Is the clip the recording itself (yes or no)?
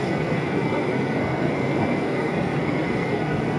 no